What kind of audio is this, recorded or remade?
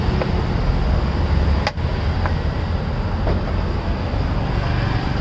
recorded